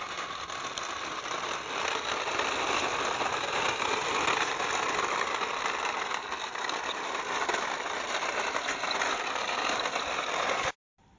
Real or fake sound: real